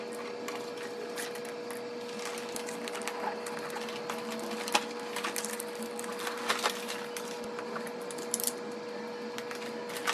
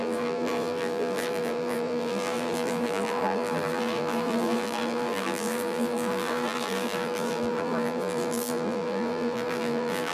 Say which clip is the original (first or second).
first